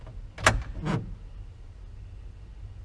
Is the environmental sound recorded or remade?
recorded